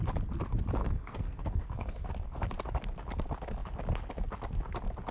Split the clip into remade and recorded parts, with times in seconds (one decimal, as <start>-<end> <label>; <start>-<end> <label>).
0.0-0.8 recorded; 0.8-2.1 remade; 2.1-5.1 recorded